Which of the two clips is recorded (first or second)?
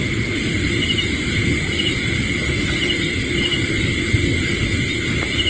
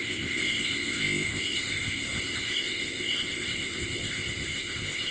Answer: first